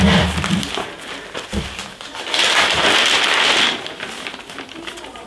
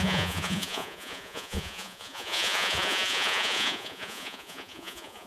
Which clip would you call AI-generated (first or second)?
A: second